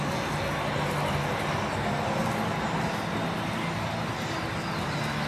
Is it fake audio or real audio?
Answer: real